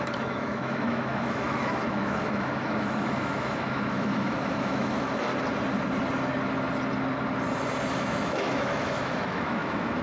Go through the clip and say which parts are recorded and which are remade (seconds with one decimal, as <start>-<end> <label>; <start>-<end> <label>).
0.0-5.3 remade; 5.3-7.9 recorded; 7.9-10.0 remade